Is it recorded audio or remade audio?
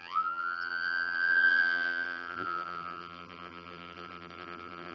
remade